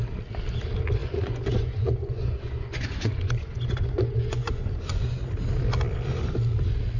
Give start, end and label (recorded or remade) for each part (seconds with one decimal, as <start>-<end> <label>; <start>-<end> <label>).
0.0-1.0 recorded; 1.0-5.2 remade; 5.2-7.0 recorded

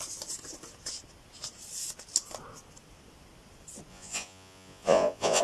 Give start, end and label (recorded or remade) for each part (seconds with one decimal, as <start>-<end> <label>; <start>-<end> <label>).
0.0-3.9 recorded; 3.9-5.4 remade

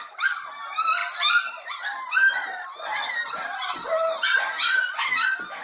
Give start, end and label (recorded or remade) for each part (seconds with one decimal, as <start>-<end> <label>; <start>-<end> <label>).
0.0-5.6 recorded

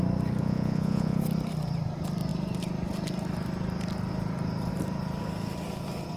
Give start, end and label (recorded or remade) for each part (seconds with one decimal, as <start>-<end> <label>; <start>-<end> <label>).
0.0-0.4 recorded; 0.4-1.2 remade; 1.2-6.2 recorded

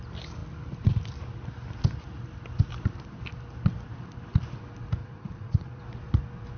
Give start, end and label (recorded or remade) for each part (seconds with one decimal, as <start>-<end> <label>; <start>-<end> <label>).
0.0-5.0 recorded; 5.0-5.8 remade; 5.8-6.6 recorded